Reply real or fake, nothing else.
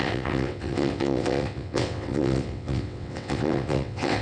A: fake